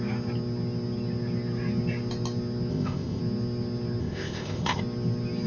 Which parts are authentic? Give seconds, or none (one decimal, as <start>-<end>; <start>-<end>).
0.0-2.7; 3.2-4.0; 4.8-5.5